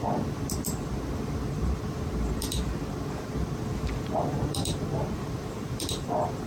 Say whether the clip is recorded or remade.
remade